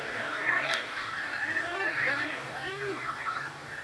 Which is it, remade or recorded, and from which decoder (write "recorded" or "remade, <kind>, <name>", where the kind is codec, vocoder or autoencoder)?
remade, codec, DAC